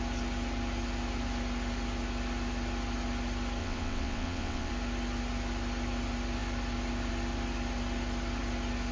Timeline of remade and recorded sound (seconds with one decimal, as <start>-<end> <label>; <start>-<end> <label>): 0.0-3.6 recorded; 3.6-4.7 remade; 4.7-8.9 recorded